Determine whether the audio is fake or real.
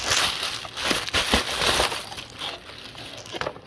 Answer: real